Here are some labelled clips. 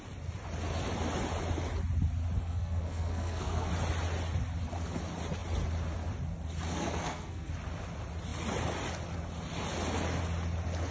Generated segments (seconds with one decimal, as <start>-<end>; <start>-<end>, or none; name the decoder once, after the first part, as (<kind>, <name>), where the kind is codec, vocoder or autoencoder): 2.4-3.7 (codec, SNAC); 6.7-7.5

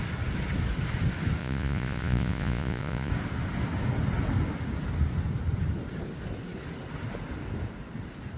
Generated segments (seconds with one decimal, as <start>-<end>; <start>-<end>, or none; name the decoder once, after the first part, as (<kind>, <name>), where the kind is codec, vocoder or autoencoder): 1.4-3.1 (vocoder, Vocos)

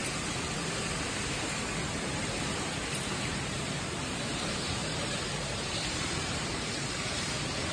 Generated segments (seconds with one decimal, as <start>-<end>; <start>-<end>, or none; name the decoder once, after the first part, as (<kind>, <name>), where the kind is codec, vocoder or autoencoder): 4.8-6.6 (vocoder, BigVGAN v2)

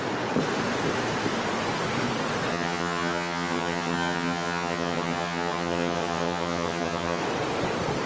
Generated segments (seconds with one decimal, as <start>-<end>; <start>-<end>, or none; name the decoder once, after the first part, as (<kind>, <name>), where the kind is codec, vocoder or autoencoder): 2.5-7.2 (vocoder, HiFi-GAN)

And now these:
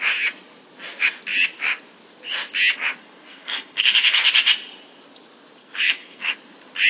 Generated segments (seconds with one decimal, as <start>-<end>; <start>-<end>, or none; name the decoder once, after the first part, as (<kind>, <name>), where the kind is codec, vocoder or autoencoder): 3.0-4.3 (codec, SNAC); 5.6-6.3

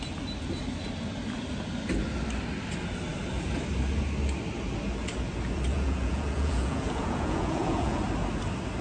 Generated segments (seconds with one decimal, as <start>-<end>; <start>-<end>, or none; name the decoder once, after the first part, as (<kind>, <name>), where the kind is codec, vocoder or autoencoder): 5.7-8.0 (vocoder, Vocos)

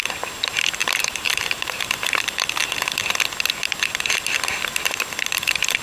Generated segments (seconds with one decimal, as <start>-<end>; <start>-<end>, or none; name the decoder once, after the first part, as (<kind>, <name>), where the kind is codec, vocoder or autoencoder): 0.8-3.0 (vocoder, BigVGAN v2)

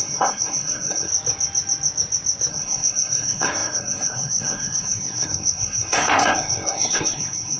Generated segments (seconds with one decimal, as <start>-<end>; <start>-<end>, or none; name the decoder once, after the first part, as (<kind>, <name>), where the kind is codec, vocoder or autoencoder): 0.0-1.1 (codec, SNAC); 2.5-7.6